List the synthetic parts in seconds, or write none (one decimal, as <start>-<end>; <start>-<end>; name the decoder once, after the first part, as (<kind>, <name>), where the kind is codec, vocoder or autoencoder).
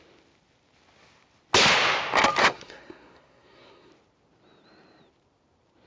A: 2.4-3.9 (codec, SNAC)